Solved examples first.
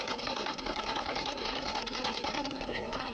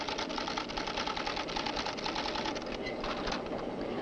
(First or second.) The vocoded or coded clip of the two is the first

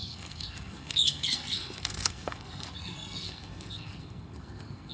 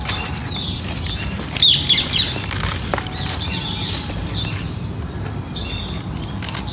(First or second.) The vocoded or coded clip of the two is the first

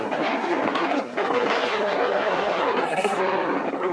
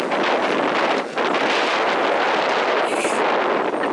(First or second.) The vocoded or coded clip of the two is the first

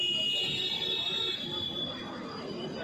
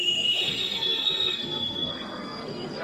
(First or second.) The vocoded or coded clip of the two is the second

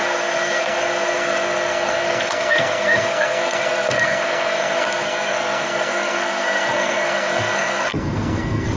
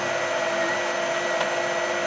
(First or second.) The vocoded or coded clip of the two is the first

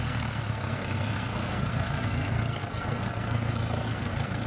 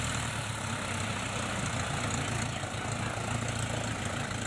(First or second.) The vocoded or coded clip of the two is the first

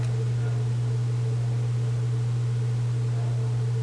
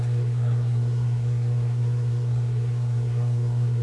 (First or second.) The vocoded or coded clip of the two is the second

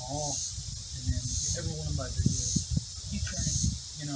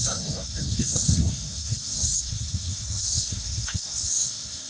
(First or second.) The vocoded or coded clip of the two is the second